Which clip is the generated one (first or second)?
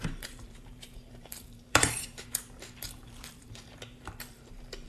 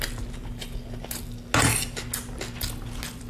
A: first